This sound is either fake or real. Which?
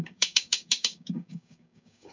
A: fake